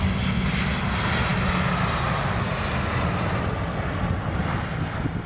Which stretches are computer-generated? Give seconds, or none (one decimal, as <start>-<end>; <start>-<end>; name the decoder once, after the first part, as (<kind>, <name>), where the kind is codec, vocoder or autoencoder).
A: none